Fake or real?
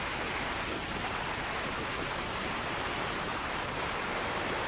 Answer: real